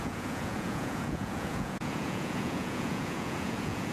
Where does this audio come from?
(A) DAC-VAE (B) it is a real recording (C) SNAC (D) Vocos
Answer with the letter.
D